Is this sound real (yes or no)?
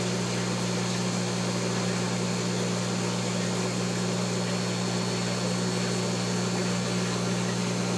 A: yes